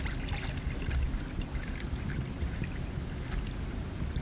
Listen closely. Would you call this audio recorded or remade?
recorded